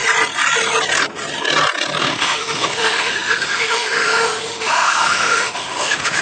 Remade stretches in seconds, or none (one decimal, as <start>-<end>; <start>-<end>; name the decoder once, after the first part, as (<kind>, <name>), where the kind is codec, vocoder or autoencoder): 2.0-6.2 (autoencoder, DAC-VAE)